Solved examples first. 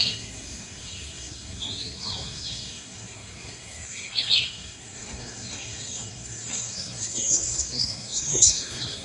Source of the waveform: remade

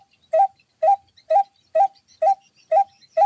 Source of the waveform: recorded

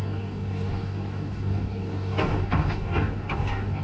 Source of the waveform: remade